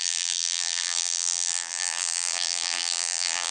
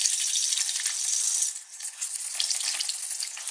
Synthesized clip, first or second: first